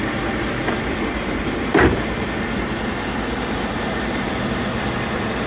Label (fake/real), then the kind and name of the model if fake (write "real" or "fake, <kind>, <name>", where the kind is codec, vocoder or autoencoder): real